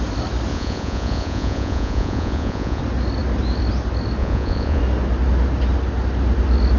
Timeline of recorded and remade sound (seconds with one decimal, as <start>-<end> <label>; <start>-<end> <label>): 0.0-0.5 recorded; 0.5-2.8 remade; 2.8-4.2 recorded; 4.2-4.8 remade; 4.8-6.8 recorded